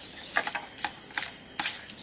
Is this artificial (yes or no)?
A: no